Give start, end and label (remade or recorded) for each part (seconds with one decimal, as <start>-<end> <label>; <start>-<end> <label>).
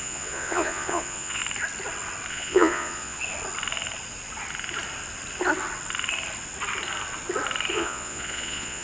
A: 0.0-1.4 remade; 1.4-2.3 recorded; 2.3-3.2 remade; 3.2-7.7 recorded; 7.7-8.8 remade